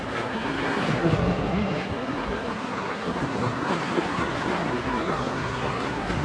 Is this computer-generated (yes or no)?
yes